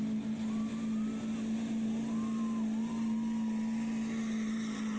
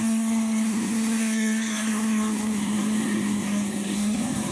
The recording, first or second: first